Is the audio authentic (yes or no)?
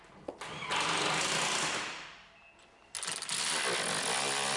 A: yes